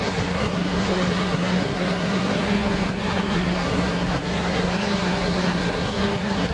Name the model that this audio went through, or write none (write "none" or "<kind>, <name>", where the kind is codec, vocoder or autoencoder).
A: codec, SNAC